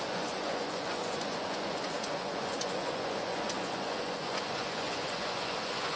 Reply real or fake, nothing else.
fake